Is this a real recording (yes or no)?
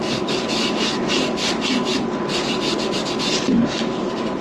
yes